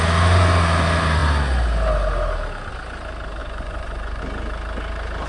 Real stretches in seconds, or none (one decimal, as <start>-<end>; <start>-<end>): 0.0-3.4; 4.2-5.3